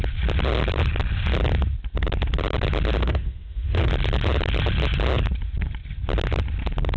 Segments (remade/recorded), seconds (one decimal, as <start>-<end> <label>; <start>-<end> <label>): 0.0-3.0 recorded; 3.0-3.9 remade; 3.9-7.0 recorded

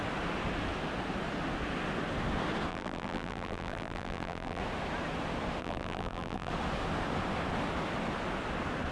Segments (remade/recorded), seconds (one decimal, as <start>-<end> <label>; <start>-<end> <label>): 0.0-2.7 recorded; 2.7-4.6 remade; 4.6-5.6 recorded; 5.6-6.5 remade; 6.5-8.9 recorded

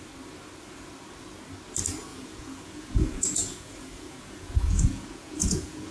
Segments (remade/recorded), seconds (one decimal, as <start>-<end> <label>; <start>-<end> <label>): 0.0-2.1 recorded; 2.1-5.9 remade

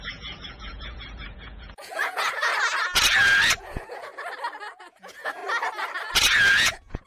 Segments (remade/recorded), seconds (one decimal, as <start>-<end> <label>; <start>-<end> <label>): 0.0-2.5 remade; 2.5-3.6 recorded; 3.6-4.1 remade; 4.1-4.8 recorded; 4.8-5.4 remade; 5.4-6.5 recorded; 6.5-7.1 remade